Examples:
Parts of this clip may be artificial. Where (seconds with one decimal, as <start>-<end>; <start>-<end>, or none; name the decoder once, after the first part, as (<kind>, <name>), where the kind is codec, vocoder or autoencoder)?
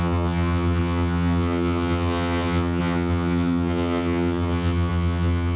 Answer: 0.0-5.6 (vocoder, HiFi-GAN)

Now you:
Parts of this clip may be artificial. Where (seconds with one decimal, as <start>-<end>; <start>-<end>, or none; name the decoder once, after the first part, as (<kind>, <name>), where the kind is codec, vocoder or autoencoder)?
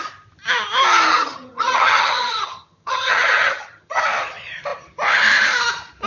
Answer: 1.1-4.0 (vocoder, HiFi-GAN)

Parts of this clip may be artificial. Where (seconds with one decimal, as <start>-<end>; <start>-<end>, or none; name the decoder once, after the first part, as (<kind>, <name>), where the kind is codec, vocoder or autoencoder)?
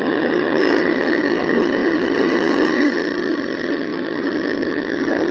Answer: 0.0-5.3 (vocoder, HiFi-GAN)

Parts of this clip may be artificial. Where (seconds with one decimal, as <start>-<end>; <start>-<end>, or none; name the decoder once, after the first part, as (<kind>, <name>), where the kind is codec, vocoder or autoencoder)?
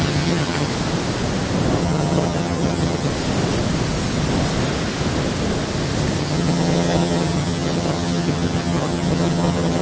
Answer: 0.0-0.7 (vocoder, HiFi-GAN); 1.8-3.1; 6.2-9.8